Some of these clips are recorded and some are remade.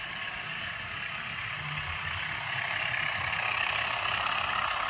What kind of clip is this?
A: recorded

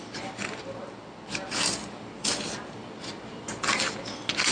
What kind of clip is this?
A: recorded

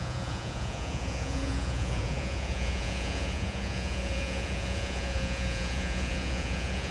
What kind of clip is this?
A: remade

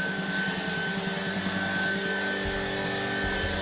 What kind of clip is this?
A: recorded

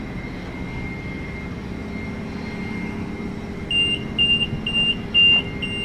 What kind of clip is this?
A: recorded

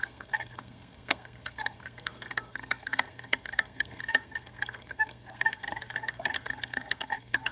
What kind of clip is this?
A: remade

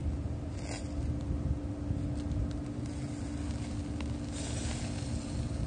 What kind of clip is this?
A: recorded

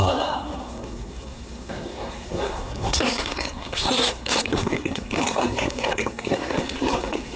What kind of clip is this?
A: remade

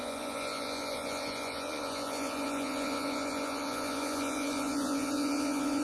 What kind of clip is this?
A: remade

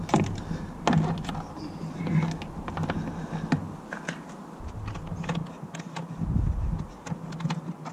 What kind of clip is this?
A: recorded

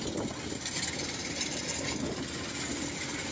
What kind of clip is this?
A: recorded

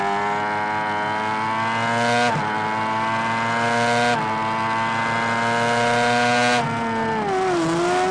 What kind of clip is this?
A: recorded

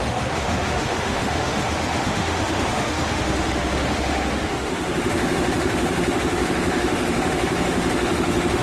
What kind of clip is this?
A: remade